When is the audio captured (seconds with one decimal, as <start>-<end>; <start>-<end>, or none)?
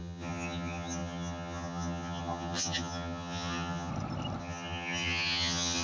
3.9-4.4